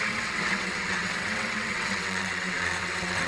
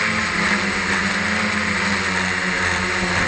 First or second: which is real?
second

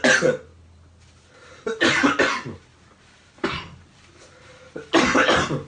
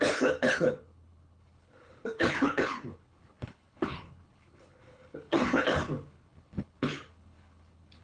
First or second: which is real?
first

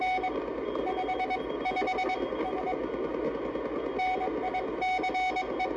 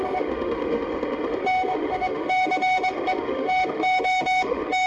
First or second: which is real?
first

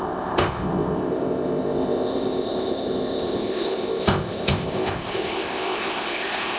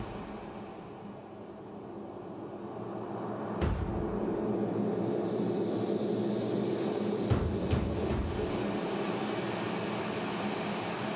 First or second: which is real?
second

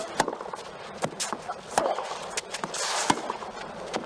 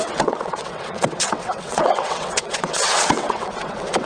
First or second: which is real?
first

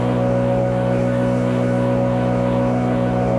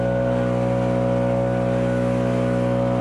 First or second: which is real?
second